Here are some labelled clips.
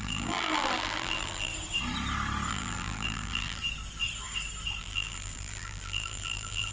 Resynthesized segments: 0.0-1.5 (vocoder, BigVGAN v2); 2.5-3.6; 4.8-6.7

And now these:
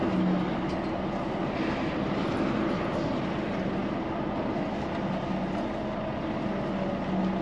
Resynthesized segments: 1.4-2.3 (vocoder, BigVGAN v2)

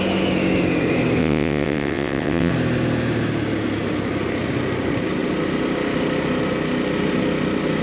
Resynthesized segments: 1.2-2.5 (vocoder, WaveNeXt)

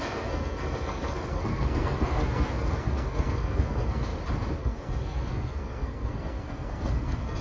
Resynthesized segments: 0.0-4.1 (codec, SNAC); 4.6-7.4

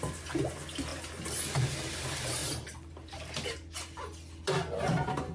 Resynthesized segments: 2.4-3.1 (vocoder, BigVGAN v2)

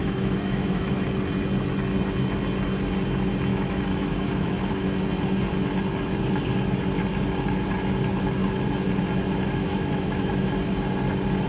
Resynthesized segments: 0.0-1.2 (autoencoder, DAC-VAE); 3.5-5.0; 9.6-10.5

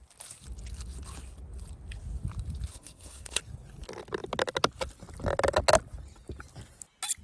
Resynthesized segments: 2.7-3.4 (codec, SNAC)

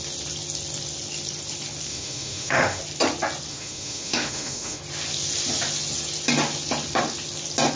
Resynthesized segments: 1.9-2.8 (autoencoder, DAC-VAE); 3.5-4.8